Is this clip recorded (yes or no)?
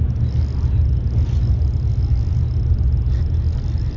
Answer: yes